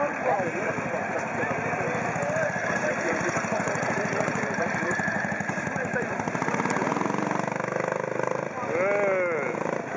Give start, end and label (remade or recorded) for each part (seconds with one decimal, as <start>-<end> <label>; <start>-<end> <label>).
0.0-2.6 recorded; 2.6-5.3 remade; 5.3-10.0 recorded